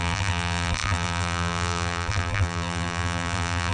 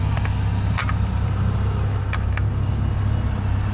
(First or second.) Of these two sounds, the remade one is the first